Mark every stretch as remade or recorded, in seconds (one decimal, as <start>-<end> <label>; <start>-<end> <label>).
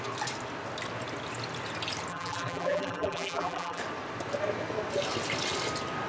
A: 0.0-2.1 recorded; 2.1-3.8 remade; 3.8-6.1 recorded